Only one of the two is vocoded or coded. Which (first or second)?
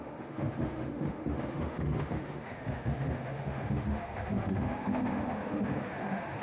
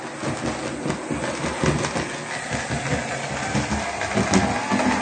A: first